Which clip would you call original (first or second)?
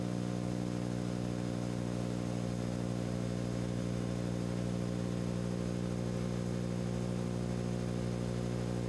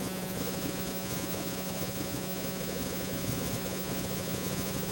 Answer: first